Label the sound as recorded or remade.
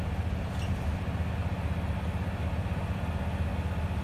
recorded